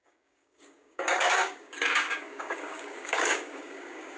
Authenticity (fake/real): fake